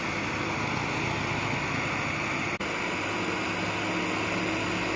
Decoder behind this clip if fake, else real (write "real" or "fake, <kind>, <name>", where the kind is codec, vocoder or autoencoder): real